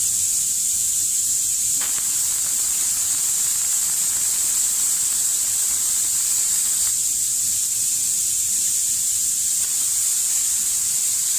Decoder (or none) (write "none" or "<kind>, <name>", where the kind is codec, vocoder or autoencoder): none